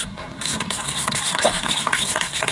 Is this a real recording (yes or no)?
no